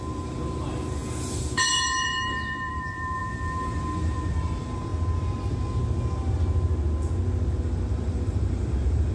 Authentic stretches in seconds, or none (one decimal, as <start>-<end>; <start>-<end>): 4.9-7.5